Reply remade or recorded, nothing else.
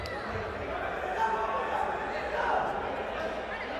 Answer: recorded